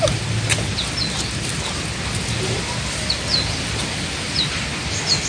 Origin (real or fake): real